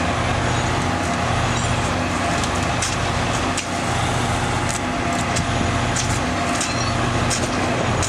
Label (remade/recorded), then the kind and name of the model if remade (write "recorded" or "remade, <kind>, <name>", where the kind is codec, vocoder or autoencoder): recorded